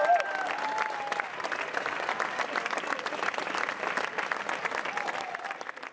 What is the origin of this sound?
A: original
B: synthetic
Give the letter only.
A